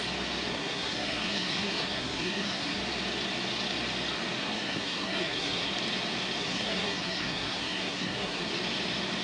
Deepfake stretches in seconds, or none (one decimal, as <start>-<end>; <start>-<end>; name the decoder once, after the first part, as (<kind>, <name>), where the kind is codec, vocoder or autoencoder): 0.5-2.8 (codec, SNAC); 4.4-5.7; 6.4-8.5